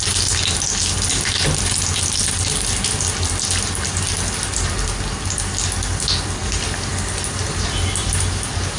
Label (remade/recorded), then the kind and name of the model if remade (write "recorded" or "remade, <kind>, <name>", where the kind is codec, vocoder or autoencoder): recorded